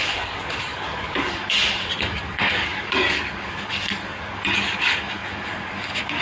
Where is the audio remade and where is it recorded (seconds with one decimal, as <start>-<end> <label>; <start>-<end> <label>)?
0.0-6.2 remade